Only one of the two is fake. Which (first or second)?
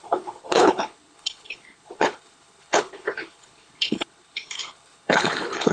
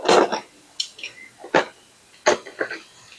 first